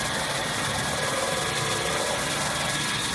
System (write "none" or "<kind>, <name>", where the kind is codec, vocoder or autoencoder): vocoder, BigVGAN v2